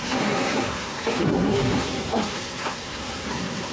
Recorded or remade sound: remade